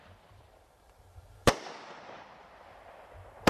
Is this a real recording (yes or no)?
no